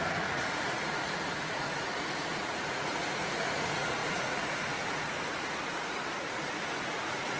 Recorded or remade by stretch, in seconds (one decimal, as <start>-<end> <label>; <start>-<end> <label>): 0.0-7.4 remade